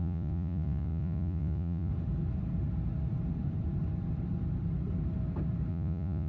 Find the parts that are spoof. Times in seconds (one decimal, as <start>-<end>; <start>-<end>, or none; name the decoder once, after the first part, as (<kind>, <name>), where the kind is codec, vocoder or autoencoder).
0.0-1.9 (vocoder, Vocos); 5.7-6.3